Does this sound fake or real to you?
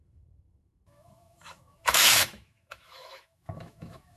fake